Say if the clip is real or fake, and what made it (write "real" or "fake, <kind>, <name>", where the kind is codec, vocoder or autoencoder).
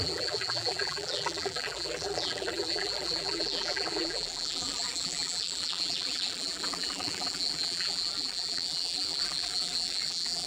fake, vocoder, BigVGAN v2